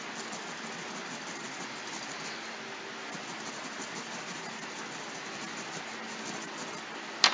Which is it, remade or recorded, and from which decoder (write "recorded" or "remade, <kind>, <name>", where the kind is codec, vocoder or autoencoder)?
recorded